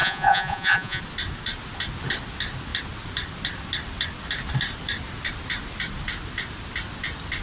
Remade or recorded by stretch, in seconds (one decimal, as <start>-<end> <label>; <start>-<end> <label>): 0.0-1.0 remade; 1.0-7.4 recorded